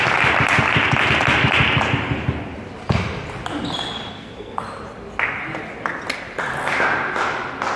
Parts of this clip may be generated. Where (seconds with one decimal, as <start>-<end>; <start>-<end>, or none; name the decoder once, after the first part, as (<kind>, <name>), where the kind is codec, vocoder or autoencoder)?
4.1-4.6 (codec, SNAC)

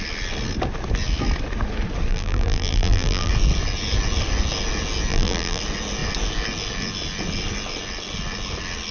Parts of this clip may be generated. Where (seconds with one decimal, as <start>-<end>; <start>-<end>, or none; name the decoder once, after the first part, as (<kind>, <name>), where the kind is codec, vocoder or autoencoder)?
2.1-3.3 (vocoder, BigVGAN v2); 5.1-5.6